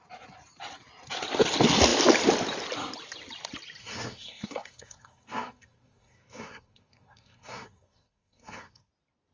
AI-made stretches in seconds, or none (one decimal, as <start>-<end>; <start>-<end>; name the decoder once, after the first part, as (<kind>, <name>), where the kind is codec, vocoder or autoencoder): 3.8-8.9 (codec, SNAC)